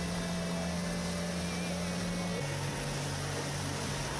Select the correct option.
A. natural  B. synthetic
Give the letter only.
A